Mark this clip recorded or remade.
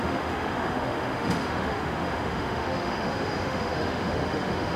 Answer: remade